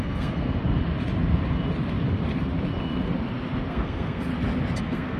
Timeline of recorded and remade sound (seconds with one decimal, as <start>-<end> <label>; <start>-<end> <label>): 0.0-0.6 remade; 0.6-3.7 recorded; 3.7-4.3 remade; 4.3-4.8 recorded; 4.8-5.2 remade